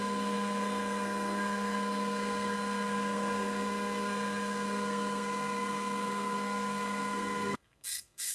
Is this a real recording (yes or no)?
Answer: no